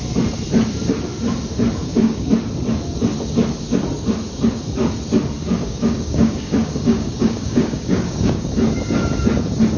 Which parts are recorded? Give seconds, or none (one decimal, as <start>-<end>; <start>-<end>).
0.0-1.8; 2.3-5.4; 8.5-9.8